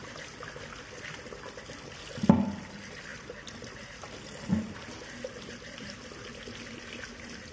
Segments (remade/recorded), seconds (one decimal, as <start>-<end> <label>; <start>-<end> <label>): 0.0-7.5 recorded